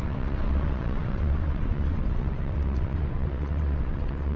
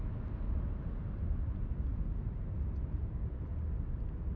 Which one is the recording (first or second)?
second